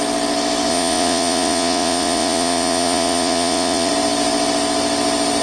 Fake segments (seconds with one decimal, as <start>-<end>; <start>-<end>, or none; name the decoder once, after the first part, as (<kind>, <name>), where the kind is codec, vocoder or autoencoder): 0.7-3.9 (vocoder, Vocos)